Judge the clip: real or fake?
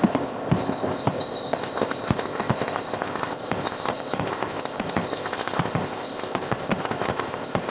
fake